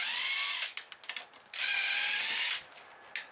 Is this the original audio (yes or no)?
yes